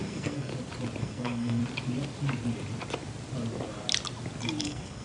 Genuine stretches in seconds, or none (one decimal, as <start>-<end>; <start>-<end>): 0.5-1.0; 1.6-4.6